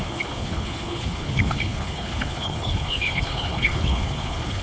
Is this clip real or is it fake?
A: fake